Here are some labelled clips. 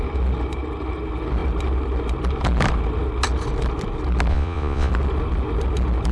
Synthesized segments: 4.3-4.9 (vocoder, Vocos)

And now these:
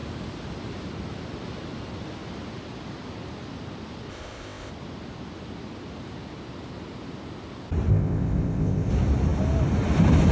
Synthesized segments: 4.1-4.7 (codec, ZipCodec); 7.9-8.9

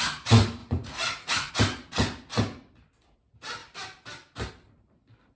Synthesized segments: 0.6-1.5 (vocoder, Vocos)

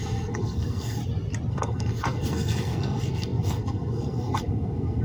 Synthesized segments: 0.0-1.0 (codec, SNAC); 1.5-5.0

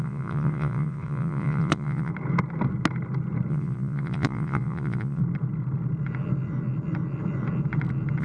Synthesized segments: 0.0-2.1 (vocoder, Vocos); 3.5-5.2

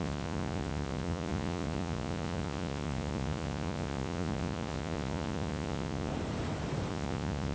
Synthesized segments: 0.0-6.1 (vocoder, Vocos); 6.9-7.5

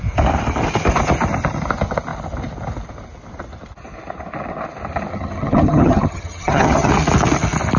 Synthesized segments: 5.1-6.9 (vocoder, HiFi-GAN)